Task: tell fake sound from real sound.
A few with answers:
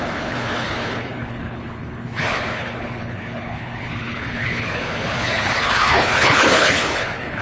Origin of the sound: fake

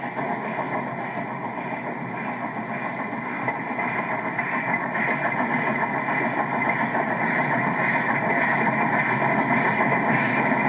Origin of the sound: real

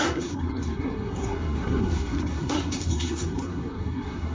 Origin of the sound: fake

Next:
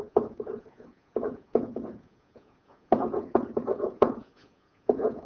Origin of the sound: fake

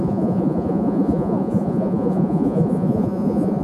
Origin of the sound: fake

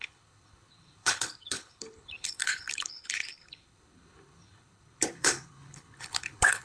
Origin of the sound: fake